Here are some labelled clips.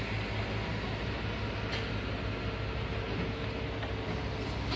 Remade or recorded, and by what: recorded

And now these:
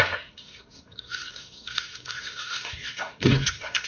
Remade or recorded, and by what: remade, codec, SNAC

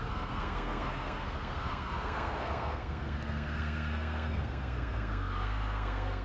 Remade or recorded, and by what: remade, codec, SNAC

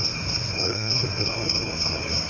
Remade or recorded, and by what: remade, codec, SNAC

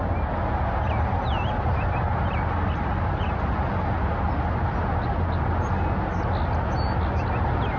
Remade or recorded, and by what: recorded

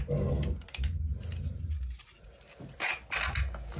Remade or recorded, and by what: recorded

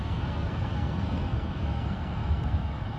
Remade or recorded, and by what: remade, codec, SNAC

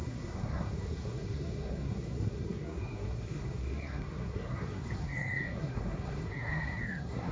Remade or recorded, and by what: remade, codec, SNAC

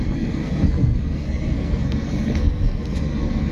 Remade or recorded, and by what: remade, codec, SNAC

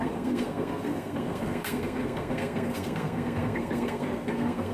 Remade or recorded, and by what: remade, codec, SNAC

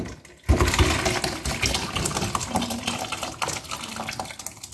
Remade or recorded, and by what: recorded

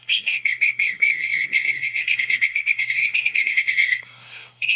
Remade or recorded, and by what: remade, codec, SNAC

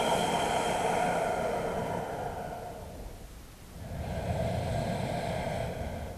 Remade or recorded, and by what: recorded